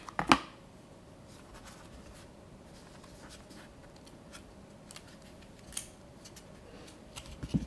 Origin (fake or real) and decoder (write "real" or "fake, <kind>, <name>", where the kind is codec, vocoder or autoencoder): real